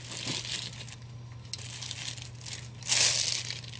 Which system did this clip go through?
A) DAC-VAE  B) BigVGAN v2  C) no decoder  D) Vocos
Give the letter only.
C